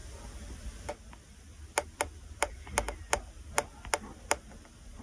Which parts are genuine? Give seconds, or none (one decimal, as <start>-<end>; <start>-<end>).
0.0-5.0